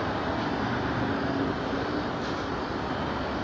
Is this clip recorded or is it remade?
recorded